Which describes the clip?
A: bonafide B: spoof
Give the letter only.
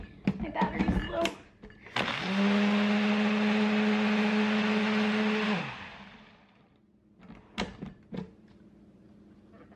A